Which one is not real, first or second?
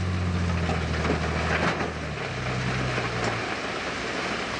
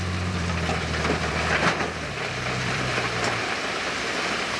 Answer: second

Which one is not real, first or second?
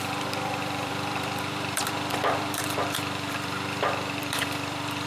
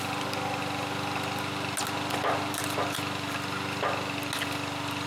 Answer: first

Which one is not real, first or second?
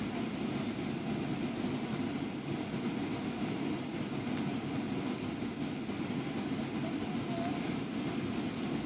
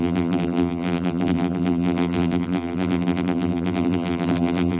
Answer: second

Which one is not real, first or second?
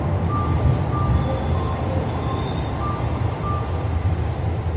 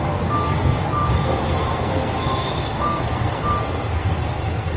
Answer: second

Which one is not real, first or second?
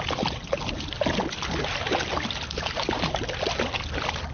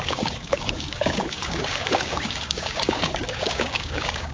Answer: second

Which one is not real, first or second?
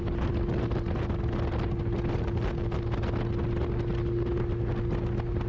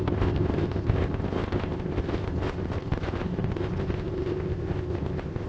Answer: second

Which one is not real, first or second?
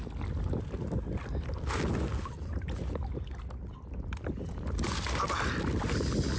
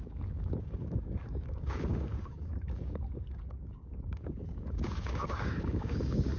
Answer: second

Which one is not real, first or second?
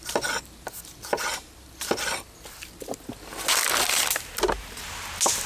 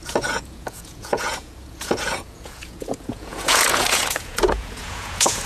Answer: second